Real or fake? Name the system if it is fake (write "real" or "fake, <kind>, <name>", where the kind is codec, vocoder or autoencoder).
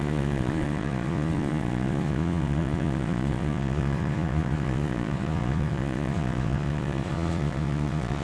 fake, vocoder, Vocos